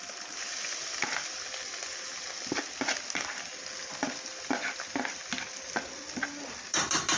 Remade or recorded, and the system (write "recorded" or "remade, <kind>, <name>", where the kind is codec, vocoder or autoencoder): recorded